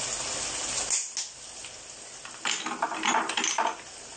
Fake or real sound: real